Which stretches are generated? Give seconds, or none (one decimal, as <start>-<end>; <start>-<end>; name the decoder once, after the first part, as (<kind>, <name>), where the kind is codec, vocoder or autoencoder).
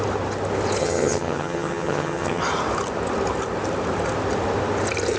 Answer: 0.8-2.4 (vocoder, HiFi-GAN)